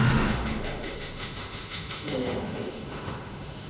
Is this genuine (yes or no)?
no